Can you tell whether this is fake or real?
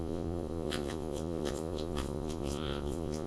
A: fake